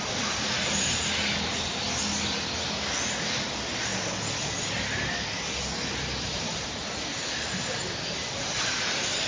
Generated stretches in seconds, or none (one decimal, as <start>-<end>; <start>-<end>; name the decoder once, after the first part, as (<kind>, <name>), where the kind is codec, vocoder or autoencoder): none